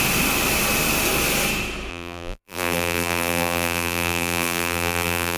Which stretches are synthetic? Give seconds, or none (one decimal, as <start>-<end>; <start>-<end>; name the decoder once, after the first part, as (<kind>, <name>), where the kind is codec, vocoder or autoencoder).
1.9-5.4 (vocoder, BigVGAN v2)